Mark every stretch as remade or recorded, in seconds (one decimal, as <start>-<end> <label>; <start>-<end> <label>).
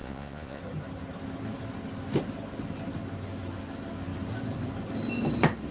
0.0-0.6 remade; 0.6-5.7 recorded